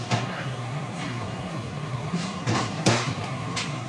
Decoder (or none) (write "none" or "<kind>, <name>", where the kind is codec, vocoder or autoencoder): codec, SNAC